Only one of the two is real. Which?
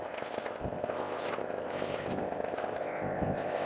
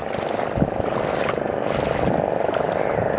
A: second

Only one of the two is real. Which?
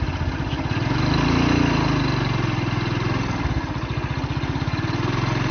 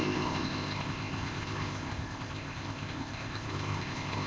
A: first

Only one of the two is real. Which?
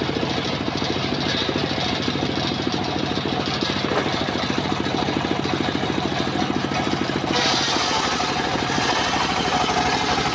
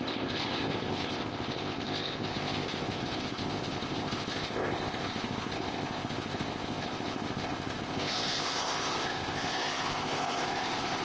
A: first